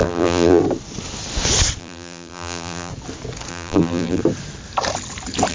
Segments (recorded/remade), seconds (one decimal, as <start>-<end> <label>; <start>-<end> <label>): 0.0-0.6 remade; 0.6-1.8 recorded; 1.8-2.9 remade; 2.9-3.5 recorded; 3.5-4.2 remade; 4.2-5.5 recorded